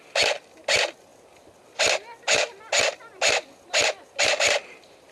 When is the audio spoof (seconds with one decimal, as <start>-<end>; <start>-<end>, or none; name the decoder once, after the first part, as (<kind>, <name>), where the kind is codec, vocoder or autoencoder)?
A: none

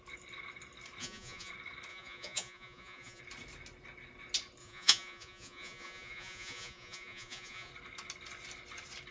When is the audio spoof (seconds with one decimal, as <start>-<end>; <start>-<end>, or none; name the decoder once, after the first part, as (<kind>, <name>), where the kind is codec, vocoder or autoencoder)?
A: 1.0-1.5 (vocoder, Vocos); 1.9-3.2; 4.6-7.7

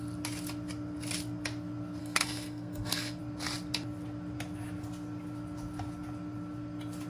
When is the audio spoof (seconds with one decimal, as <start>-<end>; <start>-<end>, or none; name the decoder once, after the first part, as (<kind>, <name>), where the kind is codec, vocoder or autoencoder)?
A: 2.0-3.2 (codec, SNAC)